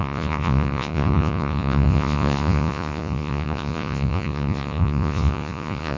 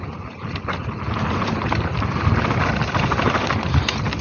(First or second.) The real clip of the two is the second